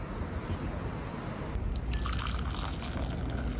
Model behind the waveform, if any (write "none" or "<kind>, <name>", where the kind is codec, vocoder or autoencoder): none